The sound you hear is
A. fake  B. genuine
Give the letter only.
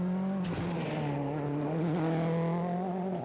B